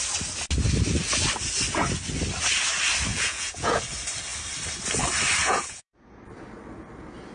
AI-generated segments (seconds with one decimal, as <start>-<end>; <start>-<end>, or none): 3.1-3.8; 5.4-6.2